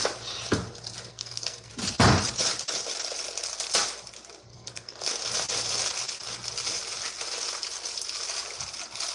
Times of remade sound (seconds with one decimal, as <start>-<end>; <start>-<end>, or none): 1.1-1.7; 4.5-5.1